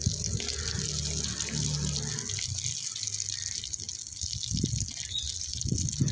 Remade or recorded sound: recorded